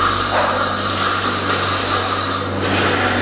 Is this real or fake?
real